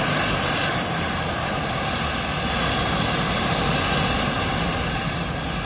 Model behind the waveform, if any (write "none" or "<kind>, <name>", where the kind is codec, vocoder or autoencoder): none